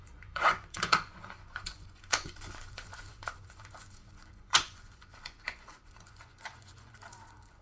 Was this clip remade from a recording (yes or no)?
yes